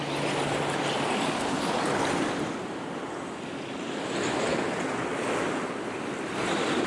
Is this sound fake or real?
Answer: real